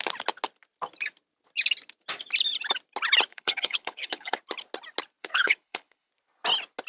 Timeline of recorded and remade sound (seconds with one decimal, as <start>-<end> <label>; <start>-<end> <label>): 0.0-3.3 recorded; 3.3-4.4 remade; 4.4-5.2 recorded; 5.2-6.1 remade; 6.1-6.9 recorded